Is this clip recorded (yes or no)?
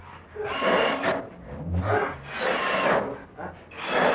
yes